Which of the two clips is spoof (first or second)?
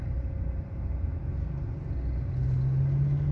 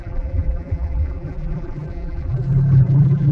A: second